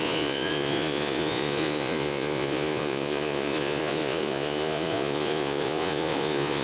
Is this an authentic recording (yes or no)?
no